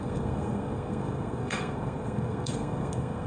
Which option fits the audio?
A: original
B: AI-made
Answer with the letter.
B